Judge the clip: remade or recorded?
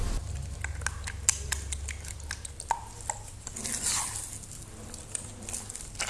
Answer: recorded